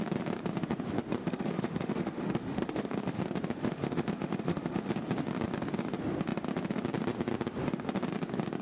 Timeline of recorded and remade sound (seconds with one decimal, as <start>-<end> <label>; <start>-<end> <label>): 0.0-1.2 recorded; 1.2-3.2 remade; 3.2-3.6 recorded; 3.6-4.9 remade; 4.9-8.6 recorded